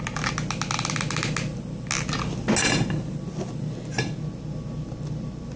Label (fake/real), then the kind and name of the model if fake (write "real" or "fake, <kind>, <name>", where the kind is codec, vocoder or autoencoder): real